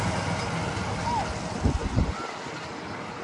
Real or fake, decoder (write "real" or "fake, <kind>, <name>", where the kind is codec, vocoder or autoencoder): real